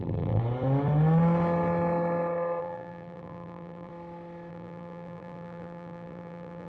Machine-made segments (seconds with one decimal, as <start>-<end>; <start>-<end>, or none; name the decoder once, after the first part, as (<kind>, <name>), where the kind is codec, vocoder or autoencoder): 0.0-0.4 (vocoder, BigVGAN v2); 2.6-3.9; 4.5-6.7